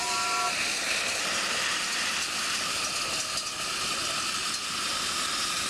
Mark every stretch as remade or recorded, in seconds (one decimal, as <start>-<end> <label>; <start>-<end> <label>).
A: 0.0-5.7 recorded